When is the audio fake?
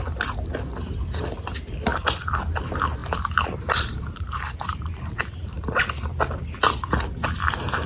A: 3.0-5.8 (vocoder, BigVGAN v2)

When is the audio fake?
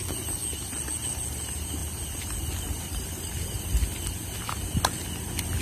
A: none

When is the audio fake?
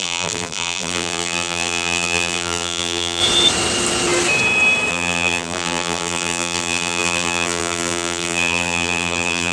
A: 0.0-3.2 (vocoder, BigVGAN v2); 4.9-9.5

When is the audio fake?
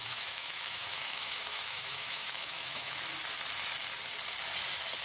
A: 0.0-3.0 (autoencoder, DAC-VAE)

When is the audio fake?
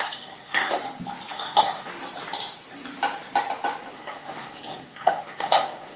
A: 0.0-0.8 (codec, SNAC); 1.3-1.9; 3.9-6.0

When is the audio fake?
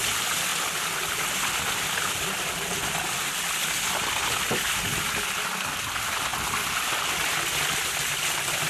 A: none